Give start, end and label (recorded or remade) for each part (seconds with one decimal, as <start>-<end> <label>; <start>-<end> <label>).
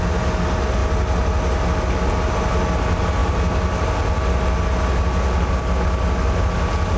0.0-7.0 recorded